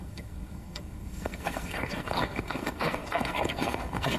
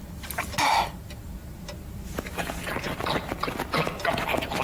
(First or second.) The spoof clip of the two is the first